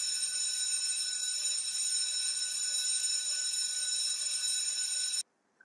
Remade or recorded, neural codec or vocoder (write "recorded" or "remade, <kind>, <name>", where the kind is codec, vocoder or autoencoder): recorded